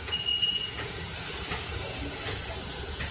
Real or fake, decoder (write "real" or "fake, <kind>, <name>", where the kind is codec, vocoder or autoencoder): fake, vocoder, Vocos